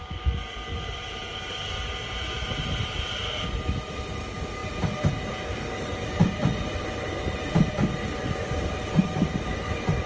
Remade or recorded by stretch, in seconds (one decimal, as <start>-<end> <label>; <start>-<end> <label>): 0.0-10.1 recorded